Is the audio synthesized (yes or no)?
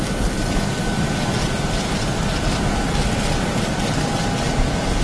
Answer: no